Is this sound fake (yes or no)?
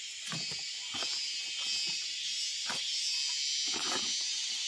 no